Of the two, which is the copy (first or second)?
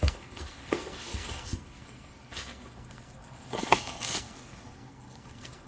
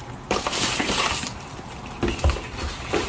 first